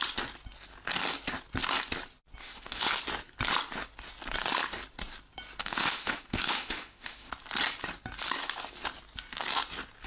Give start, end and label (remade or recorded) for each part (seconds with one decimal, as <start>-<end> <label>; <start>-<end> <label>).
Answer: 0.0-2.4 recorded; 2.4-3.0 remade; 3.0-5.6 recorded; 5.6-7.3 remade; 7.3-10.1 recorded